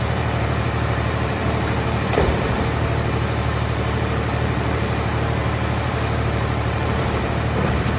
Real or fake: fake